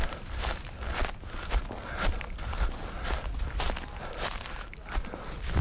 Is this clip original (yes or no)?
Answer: yes